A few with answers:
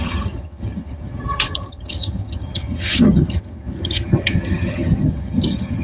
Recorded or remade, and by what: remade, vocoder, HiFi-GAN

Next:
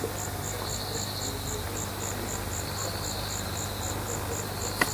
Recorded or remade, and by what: recorded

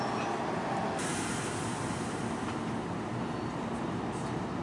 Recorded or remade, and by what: recorded